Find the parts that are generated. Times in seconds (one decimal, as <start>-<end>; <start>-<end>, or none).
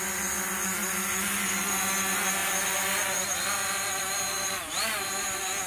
none